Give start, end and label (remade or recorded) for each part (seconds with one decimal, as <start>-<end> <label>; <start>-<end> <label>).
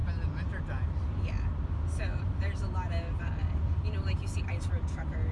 0.0-5.3 recorded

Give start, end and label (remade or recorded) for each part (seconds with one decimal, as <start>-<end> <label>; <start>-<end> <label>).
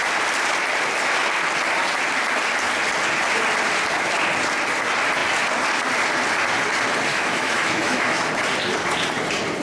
0.0-7.1 recorded; 7.1-8.3 remade; 8.3-9.6 recorded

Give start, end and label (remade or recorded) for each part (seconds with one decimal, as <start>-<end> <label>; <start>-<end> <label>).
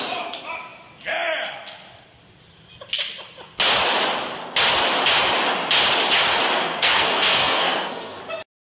0.0-6.6 recorded; 6.6-8.2 remade; 8.2-8.7 recorded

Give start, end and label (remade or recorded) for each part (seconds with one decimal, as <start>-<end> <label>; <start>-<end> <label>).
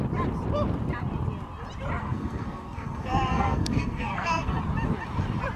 0.0-2.0 recorded; 2.0-4.6 remade; 4.6-5.6 recorded